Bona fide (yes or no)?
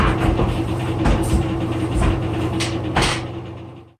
no